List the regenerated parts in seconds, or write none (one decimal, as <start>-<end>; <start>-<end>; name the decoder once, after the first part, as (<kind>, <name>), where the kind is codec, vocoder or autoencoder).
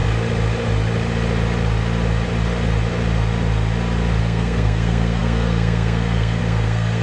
4.2-7.0 (codec, SNAC)